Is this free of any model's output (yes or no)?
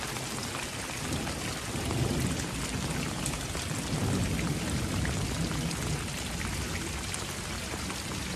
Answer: yes